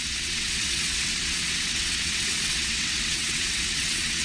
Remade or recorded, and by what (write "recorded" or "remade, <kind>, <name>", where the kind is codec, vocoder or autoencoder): remade, vocoder, WaveNeXt